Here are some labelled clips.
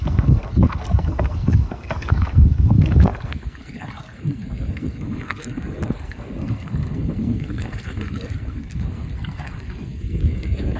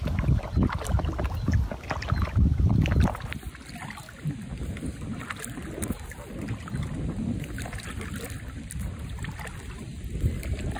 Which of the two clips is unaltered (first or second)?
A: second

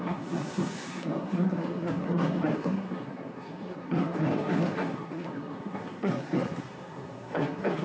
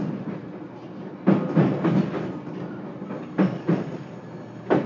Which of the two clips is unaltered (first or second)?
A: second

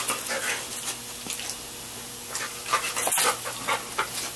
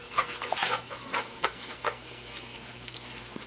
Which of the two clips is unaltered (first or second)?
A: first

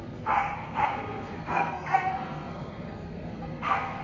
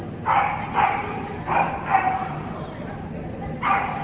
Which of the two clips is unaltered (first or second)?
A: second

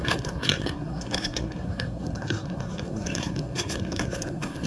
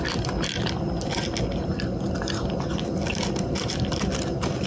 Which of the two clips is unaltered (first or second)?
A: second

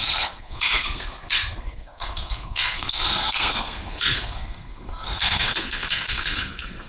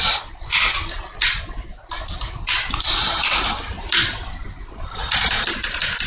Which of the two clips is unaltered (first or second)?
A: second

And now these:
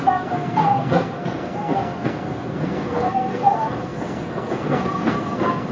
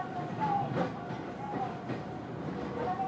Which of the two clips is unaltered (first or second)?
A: second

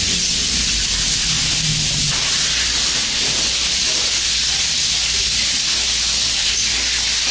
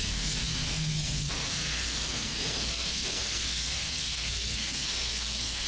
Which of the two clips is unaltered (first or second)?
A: first